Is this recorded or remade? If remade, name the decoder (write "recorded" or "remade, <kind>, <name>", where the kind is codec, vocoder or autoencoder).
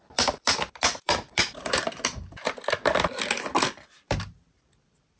remade, vocoder, BigVGAN v2